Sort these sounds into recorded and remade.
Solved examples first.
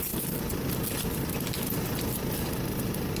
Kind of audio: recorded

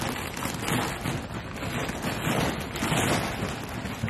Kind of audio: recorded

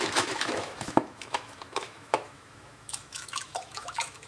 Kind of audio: remade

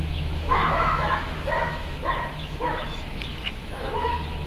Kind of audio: remade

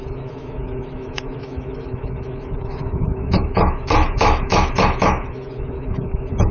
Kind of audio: remade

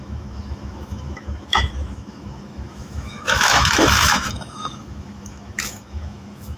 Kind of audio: remade